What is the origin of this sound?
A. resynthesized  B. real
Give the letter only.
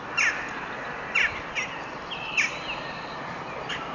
B